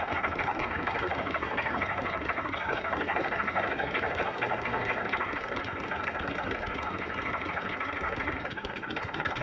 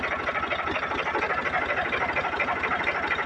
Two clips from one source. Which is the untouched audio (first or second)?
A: second